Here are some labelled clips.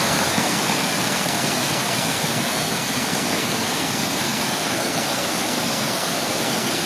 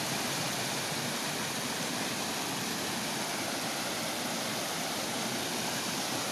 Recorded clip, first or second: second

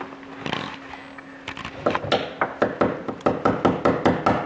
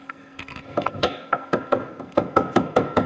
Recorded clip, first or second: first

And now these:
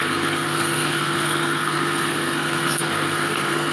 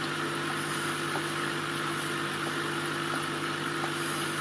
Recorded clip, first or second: second